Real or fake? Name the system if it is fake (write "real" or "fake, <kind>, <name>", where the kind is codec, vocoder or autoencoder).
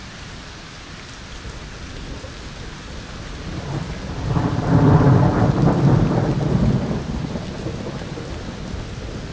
real